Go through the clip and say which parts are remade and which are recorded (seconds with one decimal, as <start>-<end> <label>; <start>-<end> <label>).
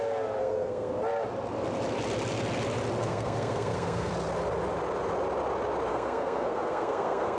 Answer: 0.0-0.4 recorded; 0.4-0.9 remade; 0.9-3.0 recorded; 3.0-4.1 remade; 4.1-5.9 recorded; 5.9-7.4 remade